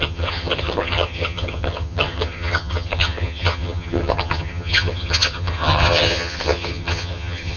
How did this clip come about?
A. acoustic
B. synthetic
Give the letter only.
B